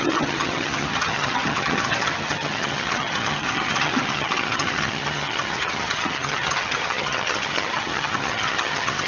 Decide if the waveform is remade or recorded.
remade